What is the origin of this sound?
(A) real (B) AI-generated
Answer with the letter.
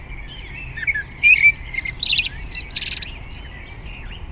A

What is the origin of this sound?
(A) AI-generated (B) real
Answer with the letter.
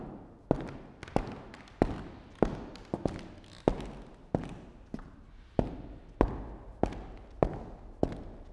B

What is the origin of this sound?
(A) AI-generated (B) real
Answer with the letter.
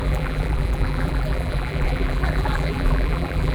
A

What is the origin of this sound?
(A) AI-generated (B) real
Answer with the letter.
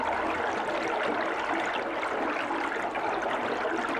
B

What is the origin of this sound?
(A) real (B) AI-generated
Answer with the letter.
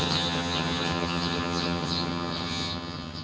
B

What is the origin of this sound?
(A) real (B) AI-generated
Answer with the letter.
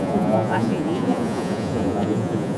B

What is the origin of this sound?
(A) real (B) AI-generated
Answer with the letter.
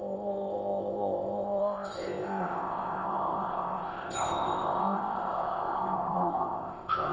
B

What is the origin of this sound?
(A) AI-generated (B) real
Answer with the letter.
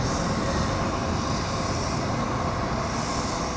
B